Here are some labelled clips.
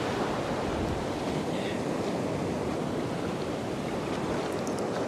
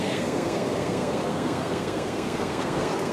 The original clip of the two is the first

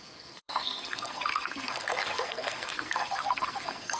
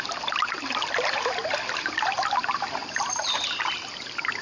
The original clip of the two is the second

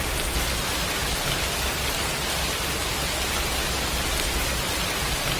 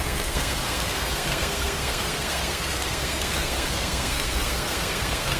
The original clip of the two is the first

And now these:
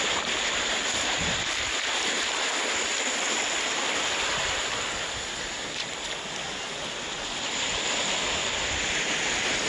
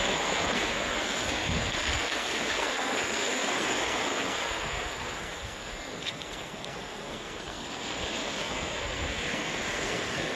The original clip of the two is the first